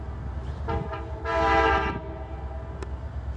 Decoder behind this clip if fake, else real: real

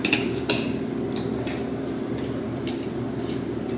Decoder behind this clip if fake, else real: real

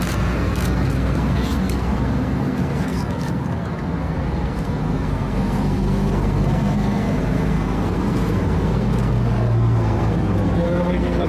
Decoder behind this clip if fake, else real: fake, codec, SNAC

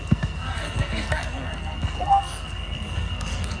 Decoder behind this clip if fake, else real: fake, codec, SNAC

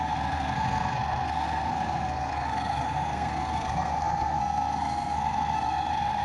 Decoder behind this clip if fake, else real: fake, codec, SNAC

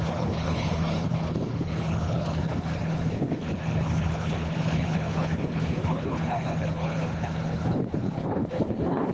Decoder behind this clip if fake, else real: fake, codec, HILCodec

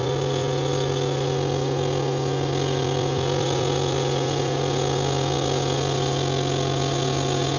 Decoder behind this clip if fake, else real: real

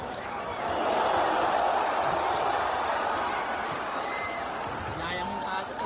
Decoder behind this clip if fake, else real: real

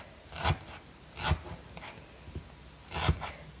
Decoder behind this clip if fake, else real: real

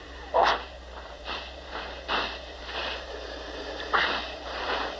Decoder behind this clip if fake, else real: fake, vocoder, BigVGAN v2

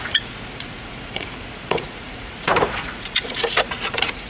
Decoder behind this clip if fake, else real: fake, vocoder, Vocos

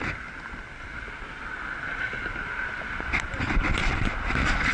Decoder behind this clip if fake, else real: real